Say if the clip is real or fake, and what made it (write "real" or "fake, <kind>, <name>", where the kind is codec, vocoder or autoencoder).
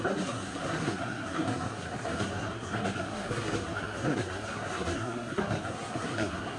fake, codec, SNAC